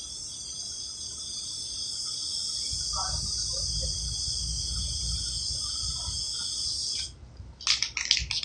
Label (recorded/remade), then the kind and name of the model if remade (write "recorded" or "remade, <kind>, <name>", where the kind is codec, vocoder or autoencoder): recorded